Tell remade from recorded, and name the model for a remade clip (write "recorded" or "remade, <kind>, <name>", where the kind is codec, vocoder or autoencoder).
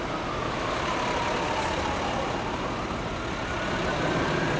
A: recorded